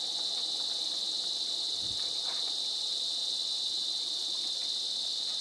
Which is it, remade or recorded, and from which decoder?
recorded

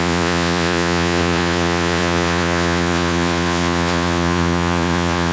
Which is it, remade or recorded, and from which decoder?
remade, vocoder, Vocos